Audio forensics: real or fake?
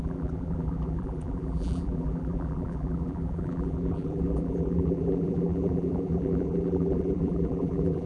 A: fake